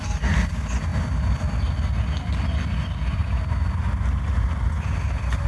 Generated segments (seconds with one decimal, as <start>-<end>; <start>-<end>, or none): none